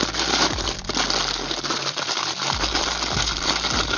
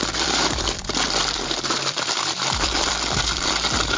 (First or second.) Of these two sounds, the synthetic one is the second